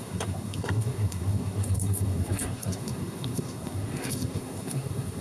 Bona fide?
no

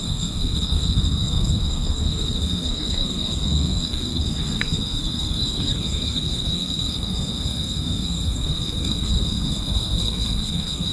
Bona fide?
no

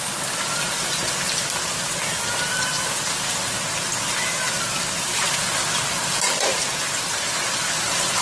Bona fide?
yes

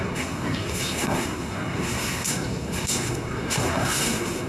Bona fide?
no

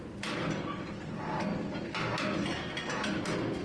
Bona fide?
yes